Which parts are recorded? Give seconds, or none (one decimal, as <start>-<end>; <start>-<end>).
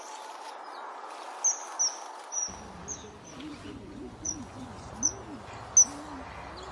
0.0-3.5; 4.9-6.7